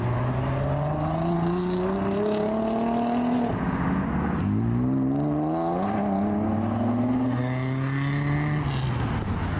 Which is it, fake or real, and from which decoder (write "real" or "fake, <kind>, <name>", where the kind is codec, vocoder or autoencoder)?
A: real